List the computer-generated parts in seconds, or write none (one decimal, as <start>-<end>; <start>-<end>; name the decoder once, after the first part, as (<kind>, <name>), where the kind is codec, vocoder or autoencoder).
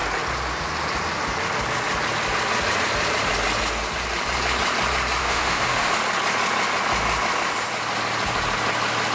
5.2-5.9 (autoencoder, DAC-VAE)